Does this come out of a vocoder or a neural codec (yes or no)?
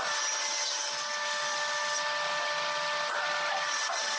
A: no